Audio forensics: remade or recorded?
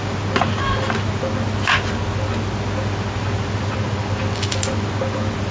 recorded